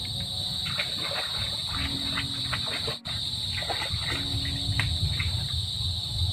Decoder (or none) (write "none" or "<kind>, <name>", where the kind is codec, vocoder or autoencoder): none